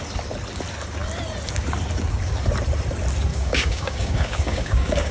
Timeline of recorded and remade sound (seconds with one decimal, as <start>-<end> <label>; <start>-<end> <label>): 0.0-3.3 recorded; 3.3-5.1 remade